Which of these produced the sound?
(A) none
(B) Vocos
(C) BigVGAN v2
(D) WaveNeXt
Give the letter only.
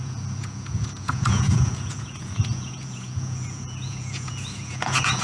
B